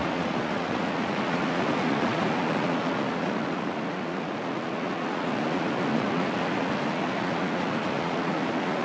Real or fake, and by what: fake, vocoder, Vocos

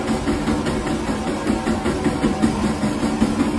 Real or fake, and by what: real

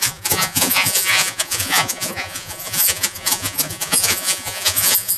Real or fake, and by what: fake, vocoder, Vocos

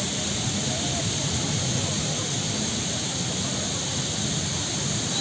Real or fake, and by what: real